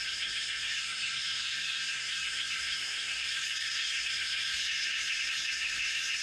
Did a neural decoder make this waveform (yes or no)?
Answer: yes